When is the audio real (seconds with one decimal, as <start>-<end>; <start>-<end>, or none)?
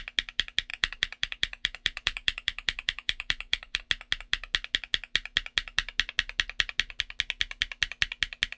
0.0-0.7; 3.8-8.6